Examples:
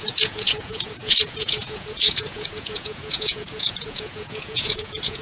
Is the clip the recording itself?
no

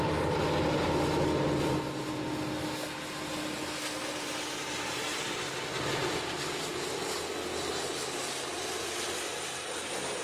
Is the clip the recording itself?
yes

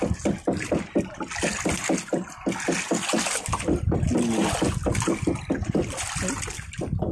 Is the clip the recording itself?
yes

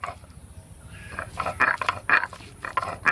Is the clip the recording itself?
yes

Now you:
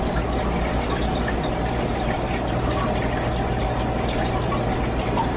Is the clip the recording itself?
yes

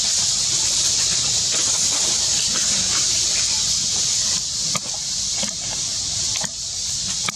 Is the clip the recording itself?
yes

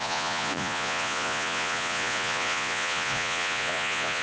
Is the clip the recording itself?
no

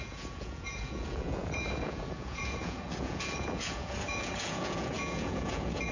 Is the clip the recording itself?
no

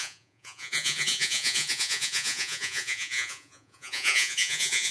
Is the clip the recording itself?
no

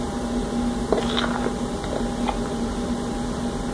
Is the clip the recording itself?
yes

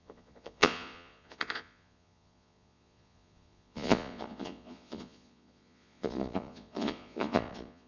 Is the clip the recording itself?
no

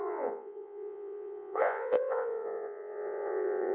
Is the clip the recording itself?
no